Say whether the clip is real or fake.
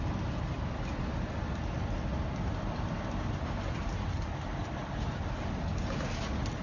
real